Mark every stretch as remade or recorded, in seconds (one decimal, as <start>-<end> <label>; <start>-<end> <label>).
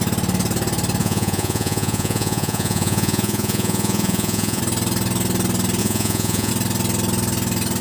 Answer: 0.0-1.0 recorded; 1.0-4.6 remade; 4.6-5.8 recorded; 5.8-6.5 remade; 6.5-7.8 recorded